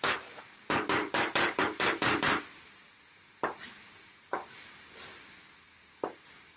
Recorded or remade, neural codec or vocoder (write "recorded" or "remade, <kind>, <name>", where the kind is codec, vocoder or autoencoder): remade, vocoder, BigVGAN v2